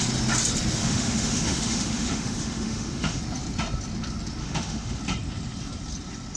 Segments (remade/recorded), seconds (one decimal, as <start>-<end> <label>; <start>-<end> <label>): 0.0-0.8 recorded; 0.8-3.2 remade; 3.2-4.4 recorded; 4.4-5.0 remade; 5.0-6.4 recorded